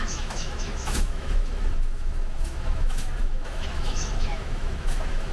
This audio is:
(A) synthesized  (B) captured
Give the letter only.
A